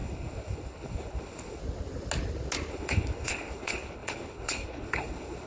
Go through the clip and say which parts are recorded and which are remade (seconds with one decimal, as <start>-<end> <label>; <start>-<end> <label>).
0.0-1.6 remade; 1.6-2.7 recorded; 2.7-5.5 remade